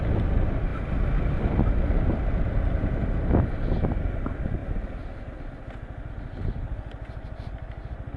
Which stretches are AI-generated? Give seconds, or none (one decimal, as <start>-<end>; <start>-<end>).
none